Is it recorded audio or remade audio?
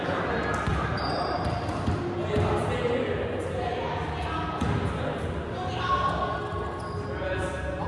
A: recorded